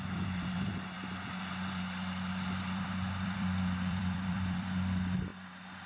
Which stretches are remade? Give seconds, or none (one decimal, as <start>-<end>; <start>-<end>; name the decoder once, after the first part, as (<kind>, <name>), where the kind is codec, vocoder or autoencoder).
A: 0.0-5.9 (vocoder, BigVGAN v2)